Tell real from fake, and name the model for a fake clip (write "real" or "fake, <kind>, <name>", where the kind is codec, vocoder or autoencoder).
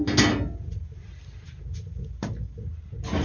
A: real